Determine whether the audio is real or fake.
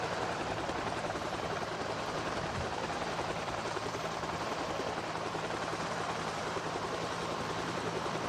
fake